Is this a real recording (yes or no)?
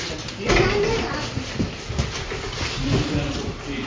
yes